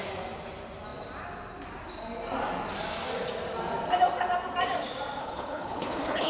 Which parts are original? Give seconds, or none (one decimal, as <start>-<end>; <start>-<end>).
0.0-5.2